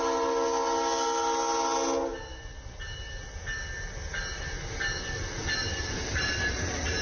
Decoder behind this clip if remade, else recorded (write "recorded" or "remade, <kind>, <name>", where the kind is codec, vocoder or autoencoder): recorded